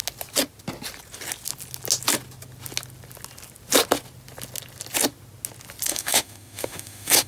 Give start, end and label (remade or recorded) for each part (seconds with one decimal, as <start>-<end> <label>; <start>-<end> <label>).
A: 0.0-5.9 recorded; 5.9-7.3 remade

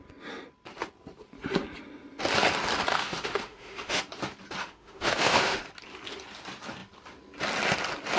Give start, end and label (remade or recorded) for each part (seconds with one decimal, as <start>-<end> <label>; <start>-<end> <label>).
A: 0.0-2.9 recorded; 2.9-4.0 remade; 4.0-4.6 recorded; 4.6-5.6 remade; 5.6-8.2 recorded

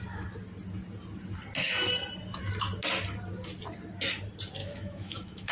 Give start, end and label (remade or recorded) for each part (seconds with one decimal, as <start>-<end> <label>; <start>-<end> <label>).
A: 0.0-4.6 recorded; 4.6-5.5 remade

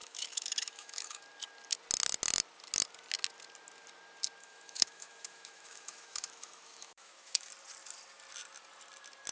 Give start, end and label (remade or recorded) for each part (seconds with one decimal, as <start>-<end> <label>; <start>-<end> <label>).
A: 0.0-1.2 remade; 1.2-4.4 recorded; 4.4-7.5 remade; 7.5-9.3 recorded

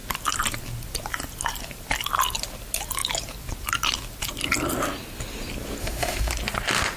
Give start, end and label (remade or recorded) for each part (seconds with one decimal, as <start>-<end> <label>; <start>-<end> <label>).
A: 0.0-5.8 recorded; 5.8-6.3 remade; 6.3-7.0 recorded

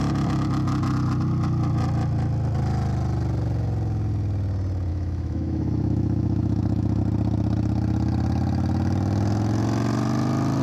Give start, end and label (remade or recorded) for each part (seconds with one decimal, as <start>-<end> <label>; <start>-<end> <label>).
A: 0.0-4.9 recorded; 4.9-7.0 remade; 7.0-10.6 recorded

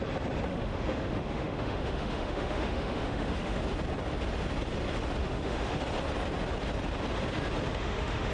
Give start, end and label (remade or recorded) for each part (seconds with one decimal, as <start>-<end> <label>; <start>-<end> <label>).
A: 0.0-0.5 recorded; 0.5-3.6 remade; 3.6-5.2 recorded; 5.2-5.8 remade; 5.8-7.7 recorded; 7.7-8.3 remade

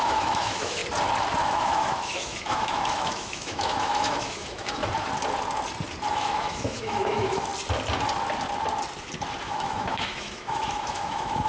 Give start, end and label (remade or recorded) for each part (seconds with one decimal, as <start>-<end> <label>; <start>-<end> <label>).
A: 0.0-0.8 remade; 0.8-1.4 recorded; 1.4-4.8 remade; 4.8-6.1 recorded; 6.1-7.5 remade; 7.5-9.4 recorded; 9.4-11.5 remade